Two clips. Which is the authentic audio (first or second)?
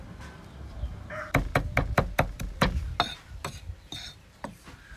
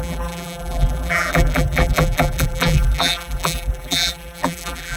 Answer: first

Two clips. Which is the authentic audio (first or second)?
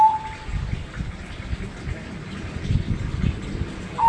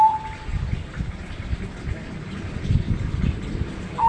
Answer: first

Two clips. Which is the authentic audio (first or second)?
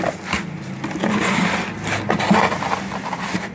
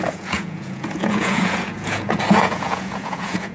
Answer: first